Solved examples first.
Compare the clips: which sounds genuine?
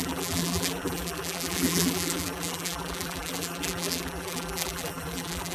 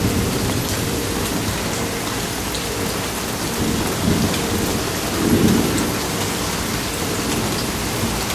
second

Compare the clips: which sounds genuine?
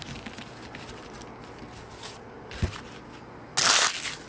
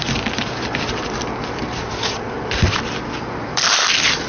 first